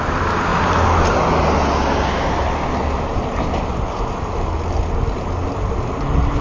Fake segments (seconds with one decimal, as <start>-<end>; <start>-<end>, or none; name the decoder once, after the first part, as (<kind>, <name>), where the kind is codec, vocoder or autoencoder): none